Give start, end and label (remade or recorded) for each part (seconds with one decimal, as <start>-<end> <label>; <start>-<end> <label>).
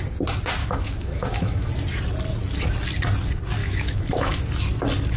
0.0-0.6 recorded; 0.6-1.7 remade; 1.7-3.6 recorded; 3.6-4.4 remade; 4.4-5.2 recorded